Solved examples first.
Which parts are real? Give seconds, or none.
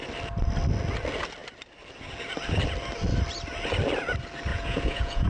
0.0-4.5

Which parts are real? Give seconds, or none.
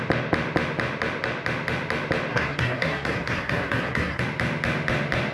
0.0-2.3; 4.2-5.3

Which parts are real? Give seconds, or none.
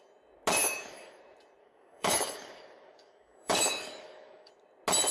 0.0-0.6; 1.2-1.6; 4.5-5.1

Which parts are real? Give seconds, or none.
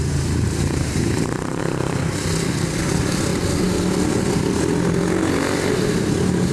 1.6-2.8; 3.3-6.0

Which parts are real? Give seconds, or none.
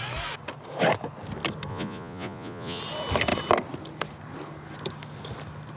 0.0-1.7; 2.8-5.8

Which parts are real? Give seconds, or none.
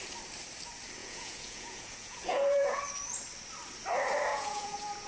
0.0-1.0; 2.8-4.3